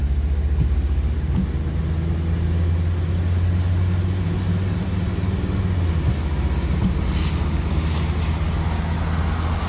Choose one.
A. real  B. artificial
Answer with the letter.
A